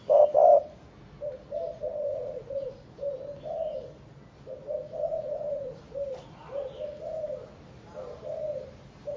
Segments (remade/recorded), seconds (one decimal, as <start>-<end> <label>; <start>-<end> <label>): 0.0-2.1 recorded; 2.1-3.0 remade; 3.0-5.1 recorded; 5.1-5.8 remade; 5.8-9.2 recorded